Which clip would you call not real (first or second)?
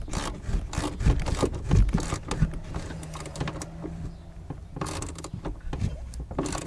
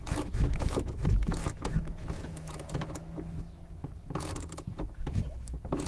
second